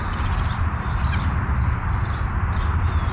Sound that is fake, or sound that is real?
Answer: real